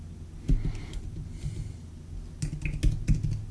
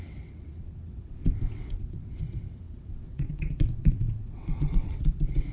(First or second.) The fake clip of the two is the second